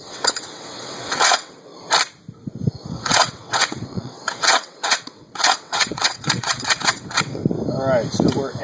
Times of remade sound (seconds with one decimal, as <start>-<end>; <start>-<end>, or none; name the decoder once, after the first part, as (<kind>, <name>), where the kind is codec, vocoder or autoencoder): 0.0-1.7 (vocoder, WaveNeXt); 2.9-7.4